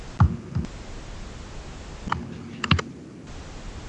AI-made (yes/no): no